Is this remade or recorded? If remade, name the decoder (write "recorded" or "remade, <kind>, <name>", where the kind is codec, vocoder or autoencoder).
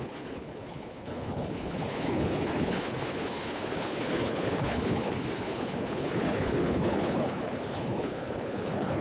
remade, codec, HILCodec